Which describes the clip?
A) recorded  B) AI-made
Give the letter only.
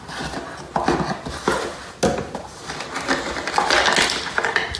A